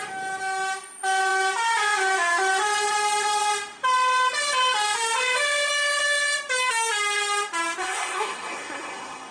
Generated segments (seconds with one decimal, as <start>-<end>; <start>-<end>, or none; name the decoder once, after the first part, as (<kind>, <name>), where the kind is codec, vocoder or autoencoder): 7.8-9.3 (codec, SNAC)

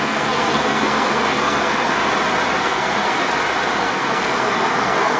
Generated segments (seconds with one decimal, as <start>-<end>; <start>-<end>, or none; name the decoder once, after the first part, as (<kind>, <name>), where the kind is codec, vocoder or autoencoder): 0.0-2.0 (codec, SNAC); 2.6-3.3; 3.8-5.2

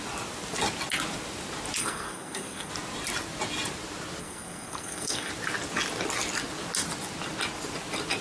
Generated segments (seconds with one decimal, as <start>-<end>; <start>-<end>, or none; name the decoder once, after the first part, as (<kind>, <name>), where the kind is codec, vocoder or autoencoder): 1.8-2.7 (codec, SNAC); 4.2-5.3

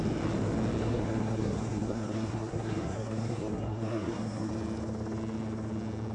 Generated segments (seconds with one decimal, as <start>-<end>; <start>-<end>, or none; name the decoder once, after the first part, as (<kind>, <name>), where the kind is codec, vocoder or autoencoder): 0.8-4.5 (codec, SNAC)

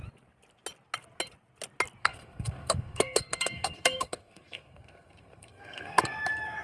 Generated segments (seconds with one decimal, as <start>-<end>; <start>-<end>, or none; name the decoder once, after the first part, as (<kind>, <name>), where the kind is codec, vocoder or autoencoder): 2.0-6.0 (codec, SNAC)

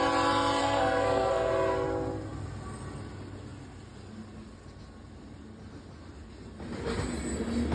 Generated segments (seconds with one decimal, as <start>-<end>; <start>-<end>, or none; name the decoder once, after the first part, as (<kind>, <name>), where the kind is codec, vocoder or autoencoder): 0.6-1.5 (codec, SNAC)

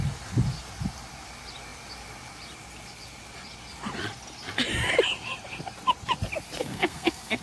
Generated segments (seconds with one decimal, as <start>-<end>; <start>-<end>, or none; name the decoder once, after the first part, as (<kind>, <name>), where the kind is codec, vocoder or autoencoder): 6.6-7.4 (codec, SNAC)